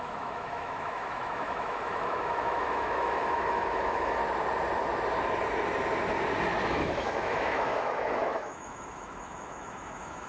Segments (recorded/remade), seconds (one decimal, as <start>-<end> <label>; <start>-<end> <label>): 0.0-4.2 remade; 4.2-6.7 recorded; 6.7-10.3 remade